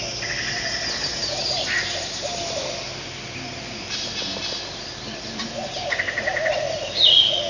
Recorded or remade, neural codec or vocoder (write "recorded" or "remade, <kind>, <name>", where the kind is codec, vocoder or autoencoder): recorded